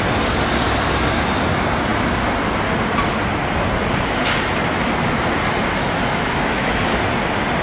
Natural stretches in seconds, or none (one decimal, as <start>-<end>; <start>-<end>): 0.0-5.8; 6.7-7.6

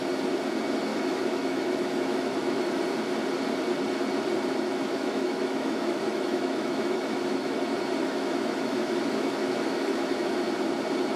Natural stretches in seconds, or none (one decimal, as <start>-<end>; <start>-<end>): 0.0-0.9; 2.8-4.7; 7.6-8.0; 10.1-11.2

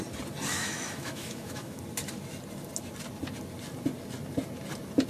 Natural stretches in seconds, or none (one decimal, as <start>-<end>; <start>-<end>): 0.0-0.5; 1.8-5.1

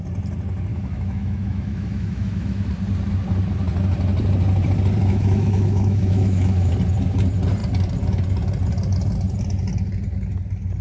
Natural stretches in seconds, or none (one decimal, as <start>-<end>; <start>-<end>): 0.0-0.7; 2.7-5.0; 6.7-10.8

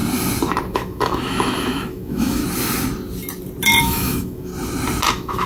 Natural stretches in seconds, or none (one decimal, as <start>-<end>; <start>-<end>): 0.0-0.7; 2.4-3.8; 4.5-5.1